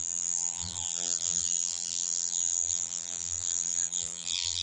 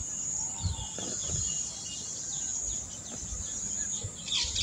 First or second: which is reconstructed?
first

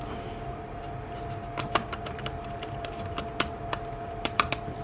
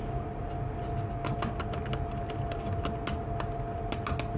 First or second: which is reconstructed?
first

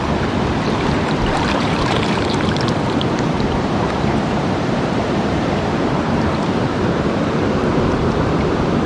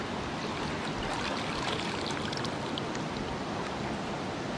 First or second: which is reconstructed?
first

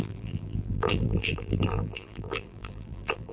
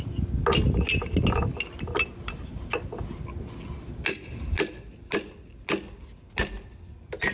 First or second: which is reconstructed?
first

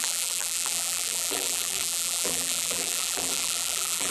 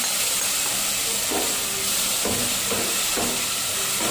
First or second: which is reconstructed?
first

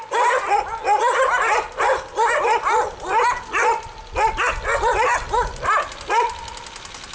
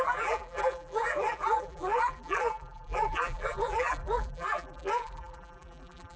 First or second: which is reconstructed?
second